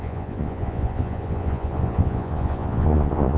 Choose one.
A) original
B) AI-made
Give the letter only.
B